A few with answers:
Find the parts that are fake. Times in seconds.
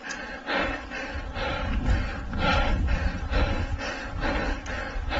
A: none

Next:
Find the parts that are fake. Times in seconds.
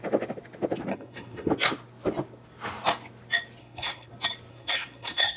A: 0.9-1.5 (codec, SNAC); 3.6-4.1; 4.5-5.4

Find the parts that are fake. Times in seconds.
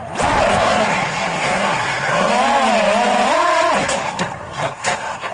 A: 0.5-2.3 (codec, SNAC); 3.8-5.3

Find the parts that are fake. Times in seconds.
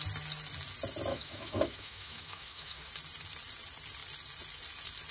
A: 1.1-2.9 (autoencoder, DAC-VAE)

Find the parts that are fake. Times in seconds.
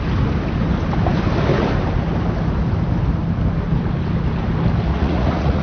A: 4.9-5.6 (vocoder, Vocos)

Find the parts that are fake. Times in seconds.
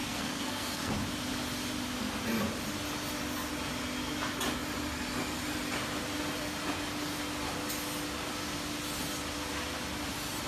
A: 0.0-0.9 (codec, SNAC)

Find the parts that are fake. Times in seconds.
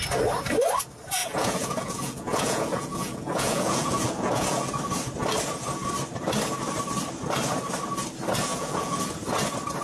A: 1.2-4.7 (vocoder, Vocos); 8.5-9.0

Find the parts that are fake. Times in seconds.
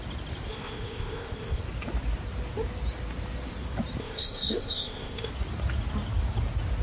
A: 0.5-1.6 (codec, ZipCodec); 4.0-5.3